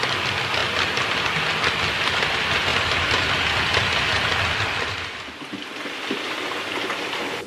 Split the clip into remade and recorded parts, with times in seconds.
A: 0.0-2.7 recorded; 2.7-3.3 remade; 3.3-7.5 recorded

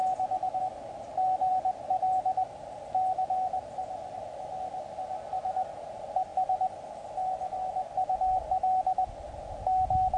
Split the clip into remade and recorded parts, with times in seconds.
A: 0.0-10.2 recorded

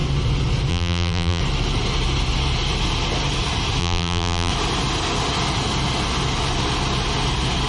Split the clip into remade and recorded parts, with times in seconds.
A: 0.0-0.7 recorded; 0.7-1.4 remade; 1.4-3.8 recorded; 3.8-4.5 remade; 4.5-7.7 recorded

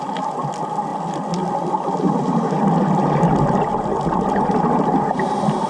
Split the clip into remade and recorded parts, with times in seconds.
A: 0.0-5.7 recorded

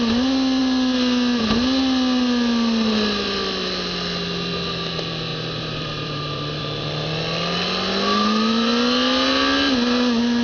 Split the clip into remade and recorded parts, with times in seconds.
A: 0.0-5.3 recorded; 5.3-6.6 remade; 6.6-10.4 recorded